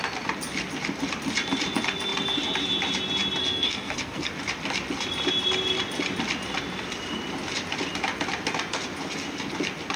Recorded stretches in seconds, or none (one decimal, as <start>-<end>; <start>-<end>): 0.0-3.4; 4.3-10.0